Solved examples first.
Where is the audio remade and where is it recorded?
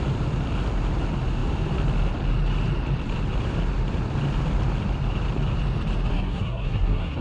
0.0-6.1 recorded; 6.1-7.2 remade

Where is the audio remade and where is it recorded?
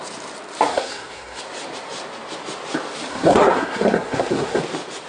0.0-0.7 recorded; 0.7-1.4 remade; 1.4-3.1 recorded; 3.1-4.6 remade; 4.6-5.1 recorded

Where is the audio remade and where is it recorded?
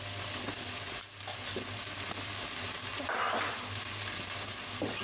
0.0-5.0 recorded